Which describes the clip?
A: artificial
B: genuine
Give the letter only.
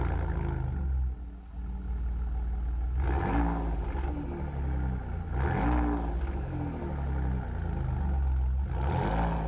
B